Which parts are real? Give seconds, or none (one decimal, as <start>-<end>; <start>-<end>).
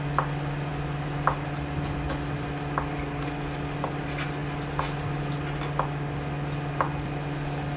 0.0-7.8